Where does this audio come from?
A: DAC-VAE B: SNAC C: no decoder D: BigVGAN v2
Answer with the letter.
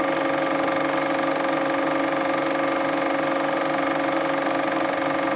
C